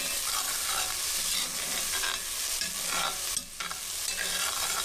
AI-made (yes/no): no